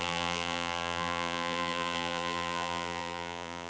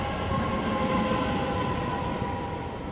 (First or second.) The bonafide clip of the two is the second